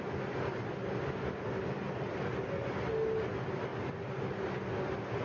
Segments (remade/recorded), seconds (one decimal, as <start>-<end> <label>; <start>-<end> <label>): 0.0-5.2 recorded